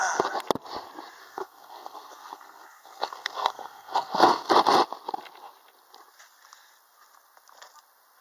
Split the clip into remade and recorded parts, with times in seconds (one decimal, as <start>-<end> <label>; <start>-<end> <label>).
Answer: 0.0-1.2 recorded; 1.2-4.5 remade; 4.5-8.2 recorded